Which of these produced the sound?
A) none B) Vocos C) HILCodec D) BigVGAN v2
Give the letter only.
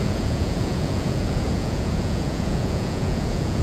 B